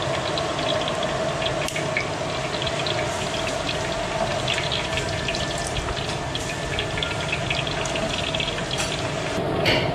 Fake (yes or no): no